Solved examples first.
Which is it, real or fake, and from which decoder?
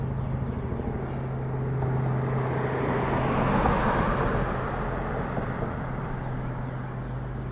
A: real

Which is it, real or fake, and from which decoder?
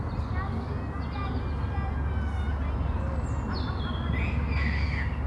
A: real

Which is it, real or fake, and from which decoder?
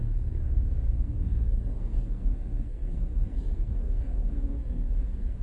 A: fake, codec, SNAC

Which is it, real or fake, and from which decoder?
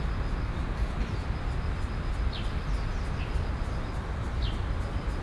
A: real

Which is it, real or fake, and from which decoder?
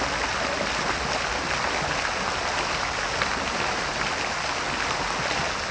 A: real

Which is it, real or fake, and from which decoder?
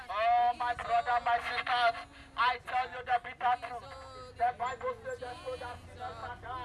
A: real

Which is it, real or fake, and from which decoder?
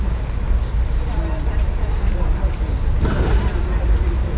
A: real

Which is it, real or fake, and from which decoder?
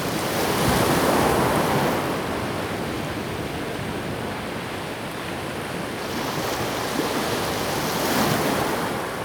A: real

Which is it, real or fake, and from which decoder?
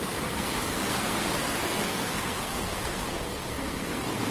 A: fake, codec, SNAC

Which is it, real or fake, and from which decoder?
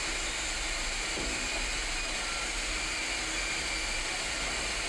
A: real